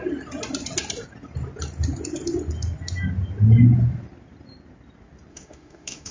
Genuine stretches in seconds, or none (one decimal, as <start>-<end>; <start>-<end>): 0.0-5.3